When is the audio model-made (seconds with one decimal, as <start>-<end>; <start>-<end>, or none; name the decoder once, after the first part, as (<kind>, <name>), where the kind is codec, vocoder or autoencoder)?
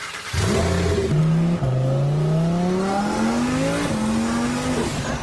none